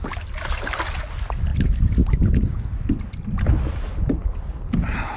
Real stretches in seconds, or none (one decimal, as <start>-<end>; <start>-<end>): 0.0-5.2